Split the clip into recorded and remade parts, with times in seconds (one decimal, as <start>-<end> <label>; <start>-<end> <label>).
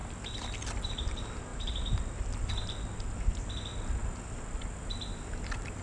0.0-5.8 recorded